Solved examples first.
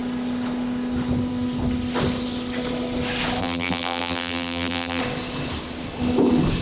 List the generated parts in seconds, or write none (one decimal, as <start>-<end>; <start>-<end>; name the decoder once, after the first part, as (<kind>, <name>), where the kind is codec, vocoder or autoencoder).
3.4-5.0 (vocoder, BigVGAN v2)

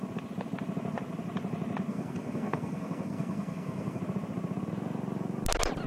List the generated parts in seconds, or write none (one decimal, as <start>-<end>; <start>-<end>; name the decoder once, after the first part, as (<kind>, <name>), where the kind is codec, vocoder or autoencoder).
1.9-4.0 (codec, SNAC)

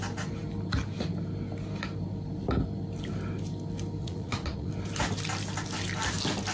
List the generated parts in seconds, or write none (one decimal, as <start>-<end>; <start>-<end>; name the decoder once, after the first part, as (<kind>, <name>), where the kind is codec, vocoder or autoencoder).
4.0-4.7 (vocoder, Vocos)

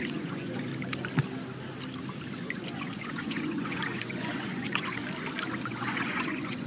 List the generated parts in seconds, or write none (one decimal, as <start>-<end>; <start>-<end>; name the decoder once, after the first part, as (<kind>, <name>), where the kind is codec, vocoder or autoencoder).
0.0-0.7 (vocoder, Vocos); 2.4-5.0; 5.7-6.7

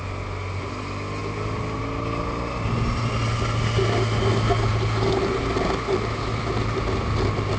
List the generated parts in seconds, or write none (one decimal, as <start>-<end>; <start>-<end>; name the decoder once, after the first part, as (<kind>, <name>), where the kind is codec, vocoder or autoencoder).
4.7-5.4 (vocoder, BigVGAN v2)

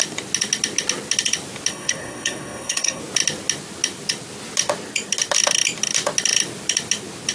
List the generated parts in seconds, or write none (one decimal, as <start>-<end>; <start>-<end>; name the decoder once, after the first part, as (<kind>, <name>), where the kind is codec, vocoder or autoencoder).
1.7-3.0 (codec, SNAC)